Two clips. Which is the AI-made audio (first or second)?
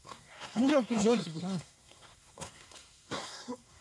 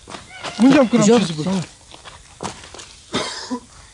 first